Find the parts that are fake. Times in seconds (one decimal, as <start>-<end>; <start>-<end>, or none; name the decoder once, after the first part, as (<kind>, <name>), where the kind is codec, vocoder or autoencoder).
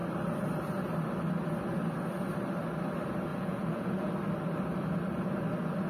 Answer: 3.3-4.1 (vocoder, Vocos)